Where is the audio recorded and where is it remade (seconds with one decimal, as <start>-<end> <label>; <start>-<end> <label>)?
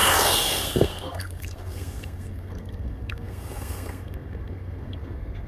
0.0-5.5 remade